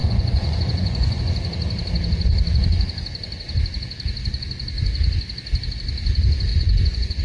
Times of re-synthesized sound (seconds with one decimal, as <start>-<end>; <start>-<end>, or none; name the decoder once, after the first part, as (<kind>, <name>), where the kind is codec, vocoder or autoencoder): 0.0-1.2 (vocoder, Vocos); 6.5-7.2